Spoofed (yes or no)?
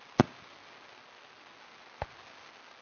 no